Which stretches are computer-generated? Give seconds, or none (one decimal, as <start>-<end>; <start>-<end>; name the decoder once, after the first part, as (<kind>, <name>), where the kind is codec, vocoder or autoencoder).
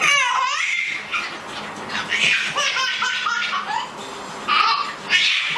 none